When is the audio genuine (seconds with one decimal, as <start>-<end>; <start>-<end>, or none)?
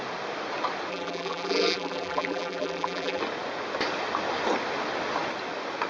0.0-0.9; 3.2-5.9